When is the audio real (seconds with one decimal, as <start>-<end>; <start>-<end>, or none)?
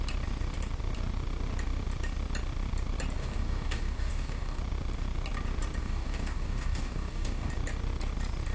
0.0-3.2; 4.6-5.8; 7.5-8.5